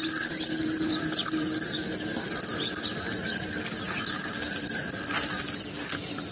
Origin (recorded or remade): recorded